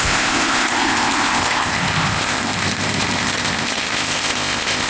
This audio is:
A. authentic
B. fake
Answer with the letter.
B